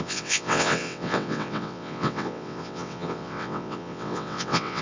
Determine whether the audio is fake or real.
fake